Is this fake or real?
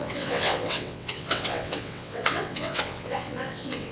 fake